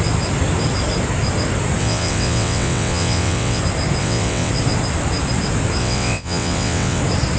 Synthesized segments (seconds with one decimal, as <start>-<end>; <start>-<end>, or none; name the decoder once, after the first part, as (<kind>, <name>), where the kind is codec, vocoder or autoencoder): 1.8-3.6 (vocoder, WaveNeXt); 4.0-4.5; 5.8-7.0

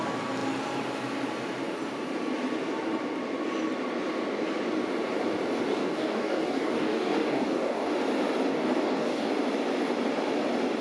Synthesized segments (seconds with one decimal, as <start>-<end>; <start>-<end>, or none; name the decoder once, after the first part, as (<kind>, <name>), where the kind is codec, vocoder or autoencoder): 5.7-7.9 (codec, DAC); 8.5-9.3